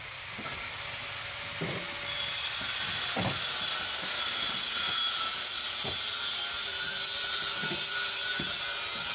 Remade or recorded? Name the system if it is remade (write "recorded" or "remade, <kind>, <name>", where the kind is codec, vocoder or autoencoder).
recorded